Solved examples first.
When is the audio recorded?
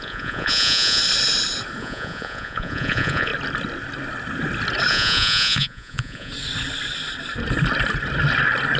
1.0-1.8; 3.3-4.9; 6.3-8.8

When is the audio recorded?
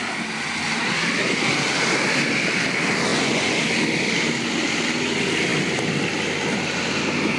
0.0-3.1; 3.6-7.4